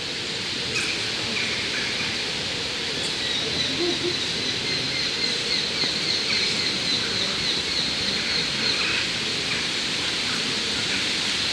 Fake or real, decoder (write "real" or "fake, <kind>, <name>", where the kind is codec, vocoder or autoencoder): real